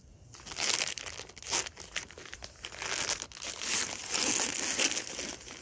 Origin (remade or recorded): recorded